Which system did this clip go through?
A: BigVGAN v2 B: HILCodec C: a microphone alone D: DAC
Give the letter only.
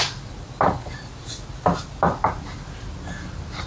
C